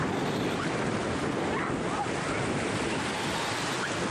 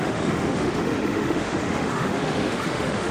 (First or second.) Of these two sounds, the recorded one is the first